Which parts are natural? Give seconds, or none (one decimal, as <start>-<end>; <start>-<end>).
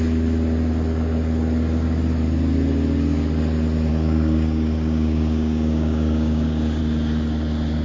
0.0-3.9; 6.8-7.8